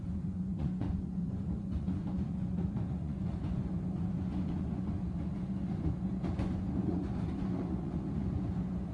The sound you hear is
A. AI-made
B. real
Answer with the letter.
A